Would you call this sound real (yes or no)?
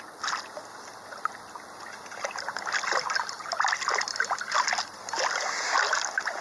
yes